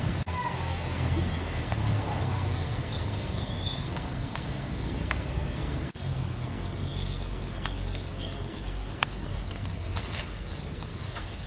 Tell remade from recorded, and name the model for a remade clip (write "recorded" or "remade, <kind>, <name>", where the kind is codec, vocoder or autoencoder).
remade, codec, SNAC